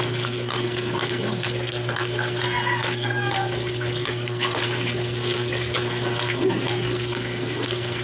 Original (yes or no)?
no